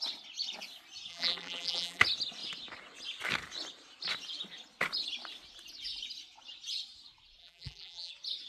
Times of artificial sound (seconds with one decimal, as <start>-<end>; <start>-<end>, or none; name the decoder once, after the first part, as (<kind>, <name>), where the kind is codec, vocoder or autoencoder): 1.1-2.0 (vocoder, BigVGAN v2); 7.4-8.1